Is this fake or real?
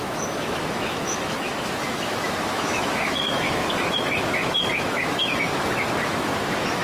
fake